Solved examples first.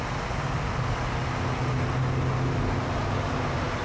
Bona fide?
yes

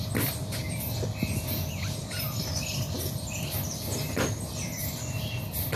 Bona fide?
yes